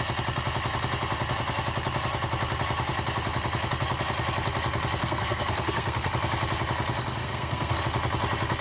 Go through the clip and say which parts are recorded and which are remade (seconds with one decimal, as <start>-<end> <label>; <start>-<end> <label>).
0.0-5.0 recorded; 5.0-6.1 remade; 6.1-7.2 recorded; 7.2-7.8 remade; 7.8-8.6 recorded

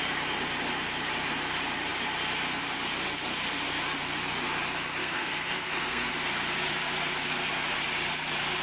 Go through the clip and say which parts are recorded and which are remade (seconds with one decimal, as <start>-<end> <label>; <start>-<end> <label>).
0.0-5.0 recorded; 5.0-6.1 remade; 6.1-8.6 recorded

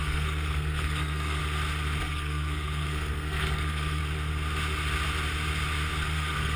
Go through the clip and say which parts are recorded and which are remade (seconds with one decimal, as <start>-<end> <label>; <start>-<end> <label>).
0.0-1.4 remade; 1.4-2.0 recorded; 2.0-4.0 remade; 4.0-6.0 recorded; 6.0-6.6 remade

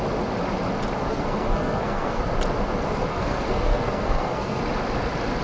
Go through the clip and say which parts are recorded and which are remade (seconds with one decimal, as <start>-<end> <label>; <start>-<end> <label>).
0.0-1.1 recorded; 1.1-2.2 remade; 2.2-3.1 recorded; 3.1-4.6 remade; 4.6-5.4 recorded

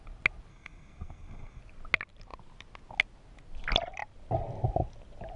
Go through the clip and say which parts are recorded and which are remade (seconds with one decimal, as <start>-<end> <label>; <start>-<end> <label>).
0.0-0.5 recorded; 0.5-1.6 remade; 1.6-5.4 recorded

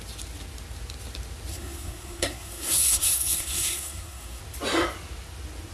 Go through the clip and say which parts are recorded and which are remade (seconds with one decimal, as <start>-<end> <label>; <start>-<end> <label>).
0.0-1.5 recorded; 1.5-4.4 remade; 4.4-5.7 recorded